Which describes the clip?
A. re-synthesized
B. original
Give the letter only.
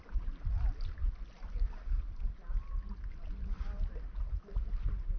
B